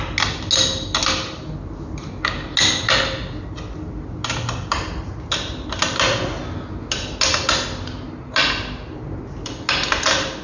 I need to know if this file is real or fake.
real